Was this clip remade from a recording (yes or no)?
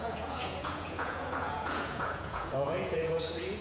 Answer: yes